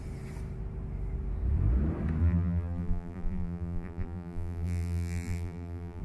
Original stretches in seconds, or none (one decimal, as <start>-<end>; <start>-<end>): 0.0-2.2